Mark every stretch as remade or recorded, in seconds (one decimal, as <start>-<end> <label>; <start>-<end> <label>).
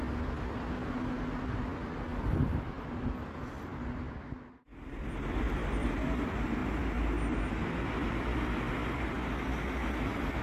0.0-2.1 recorded; 2.1-2.7 remade; 2.7-10.4 recorded